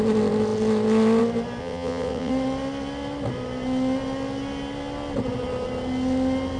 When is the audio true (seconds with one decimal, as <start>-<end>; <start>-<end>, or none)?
0.0-1.6; 2.3-6.6